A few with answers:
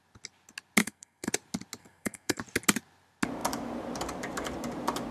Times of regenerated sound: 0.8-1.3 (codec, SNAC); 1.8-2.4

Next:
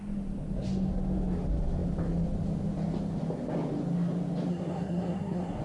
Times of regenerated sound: 4.5-5.6 (codec, SNAC)

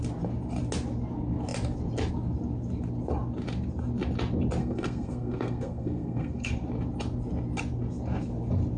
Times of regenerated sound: 4.6-6.5 (codec, SNAC)

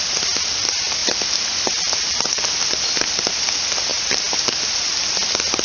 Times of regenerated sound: none